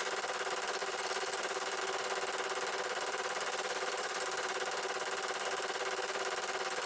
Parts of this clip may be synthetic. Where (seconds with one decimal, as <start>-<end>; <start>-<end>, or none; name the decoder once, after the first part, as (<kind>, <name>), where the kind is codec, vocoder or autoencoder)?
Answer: 0.8-1.8 (vocoder, BigVGAN v2)